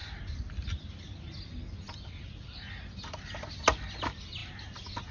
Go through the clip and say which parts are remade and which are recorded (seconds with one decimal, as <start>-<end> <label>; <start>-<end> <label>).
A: 0.0-5.1 recorded